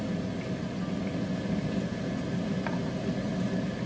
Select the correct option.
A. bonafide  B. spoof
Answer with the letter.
A